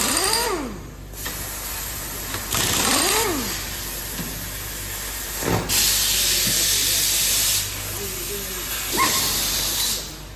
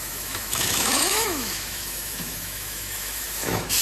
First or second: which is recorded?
first